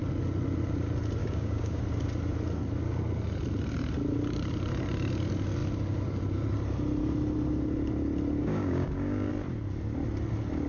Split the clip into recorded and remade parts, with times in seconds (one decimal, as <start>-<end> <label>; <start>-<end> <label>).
0.0-1.2 recorded; 1.2-1.8 remade; 1.8-8.4 recorded; 8.4-9.3 remade; 9.3-10.7 recorded